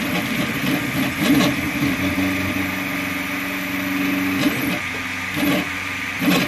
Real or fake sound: fake